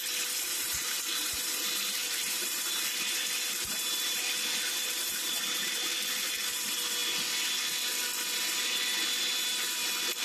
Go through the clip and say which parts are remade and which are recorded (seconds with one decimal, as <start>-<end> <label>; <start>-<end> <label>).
0.0-7.0 remade; 7.0-8.4 recorded; 8.4-10.2 remade